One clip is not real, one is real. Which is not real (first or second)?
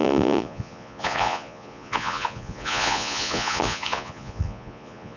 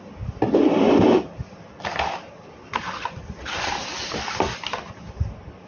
first